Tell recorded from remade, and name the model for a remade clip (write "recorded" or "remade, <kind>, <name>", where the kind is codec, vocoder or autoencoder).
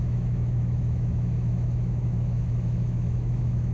remade, autoencoder, DAC-VAE